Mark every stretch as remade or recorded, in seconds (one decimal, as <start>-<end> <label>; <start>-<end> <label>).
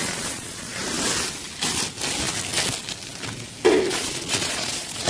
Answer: 0.0-0.8 remade; 0.8-3.9 recorded; 3.9-5.1 remade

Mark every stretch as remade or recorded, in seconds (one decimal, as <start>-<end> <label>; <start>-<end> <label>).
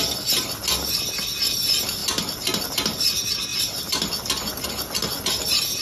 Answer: 0.0-5.8 recorded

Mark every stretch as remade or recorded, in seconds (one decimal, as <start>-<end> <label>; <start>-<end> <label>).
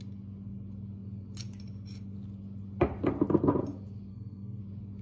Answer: 0.0-4.1 recorded; 4.1-4.6 remade; 4.6-5.0 recorded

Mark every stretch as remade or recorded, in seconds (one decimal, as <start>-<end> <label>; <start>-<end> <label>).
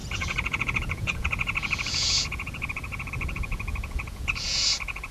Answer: 0.0-5.1 remade